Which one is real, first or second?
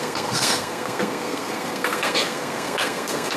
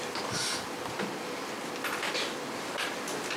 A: second